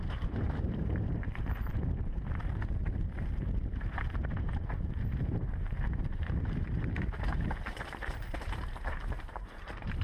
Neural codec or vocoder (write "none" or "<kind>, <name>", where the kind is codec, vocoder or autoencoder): vocoder, BigVGAN v2